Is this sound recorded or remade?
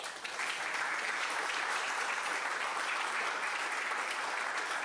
remade